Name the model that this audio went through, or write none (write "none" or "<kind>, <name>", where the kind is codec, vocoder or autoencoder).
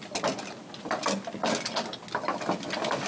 none